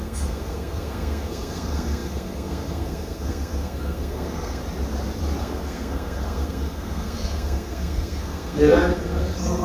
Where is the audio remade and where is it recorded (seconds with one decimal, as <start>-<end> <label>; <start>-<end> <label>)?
0.0-4.6 remade; 4.6-5.4 recorded; 5.4-9.6 remade